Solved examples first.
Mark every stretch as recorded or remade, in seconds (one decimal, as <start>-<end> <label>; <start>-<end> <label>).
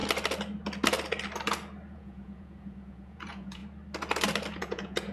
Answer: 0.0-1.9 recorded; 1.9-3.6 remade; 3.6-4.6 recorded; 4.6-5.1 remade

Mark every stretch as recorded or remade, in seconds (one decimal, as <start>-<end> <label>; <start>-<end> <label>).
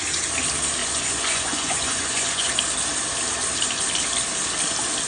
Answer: 0.0-0.8 recorded; 0.8-2.5 remade; 2.5-5.1 recorded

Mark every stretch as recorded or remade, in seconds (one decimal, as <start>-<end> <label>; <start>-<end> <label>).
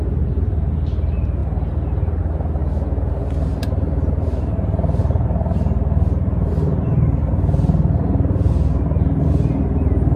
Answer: 0.0-10.2 recorded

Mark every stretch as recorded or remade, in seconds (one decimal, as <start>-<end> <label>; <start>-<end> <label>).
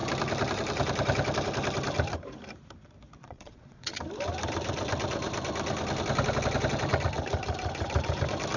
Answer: 0.0-3.2 recorded; 3.2-4.0 remade; 4.0-8.6 recorded